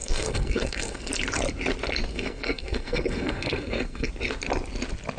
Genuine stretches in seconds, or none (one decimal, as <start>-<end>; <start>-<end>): 1.1-2.1; 4.1-5.2